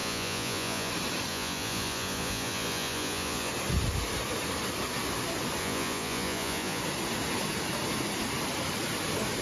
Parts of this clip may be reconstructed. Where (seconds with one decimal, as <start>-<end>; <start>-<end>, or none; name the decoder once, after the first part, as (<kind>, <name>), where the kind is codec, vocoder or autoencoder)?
0.0-0.9 (vocoder, Vocos); 1.3-3.5; 5.6-6.8